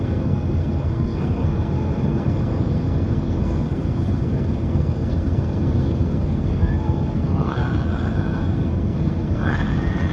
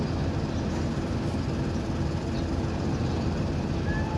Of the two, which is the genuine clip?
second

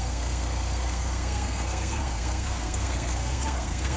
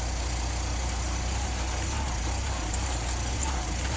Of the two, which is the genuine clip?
second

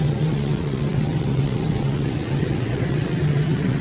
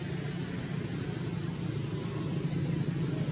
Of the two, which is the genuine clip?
second